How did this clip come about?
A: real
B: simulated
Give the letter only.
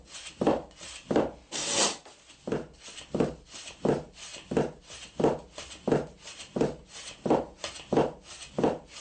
A